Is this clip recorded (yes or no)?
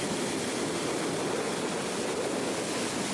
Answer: yes